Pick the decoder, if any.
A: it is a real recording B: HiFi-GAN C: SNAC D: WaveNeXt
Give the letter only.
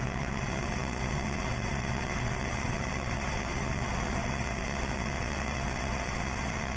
D